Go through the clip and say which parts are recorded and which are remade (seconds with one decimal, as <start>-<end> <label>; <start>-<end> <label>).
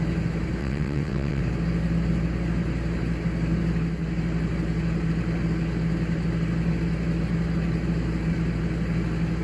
0.0-0.6 recorded; 0.6-1.4 remade; 1.4-9.4 recorded